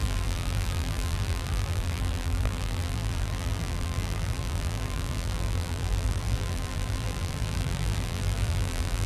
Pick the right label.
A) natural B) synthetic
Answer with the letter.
B